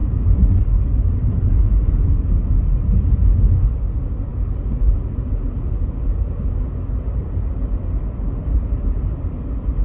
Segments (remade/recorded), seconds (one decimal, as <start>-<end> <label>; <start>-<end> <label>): 0.0-9.8 recorded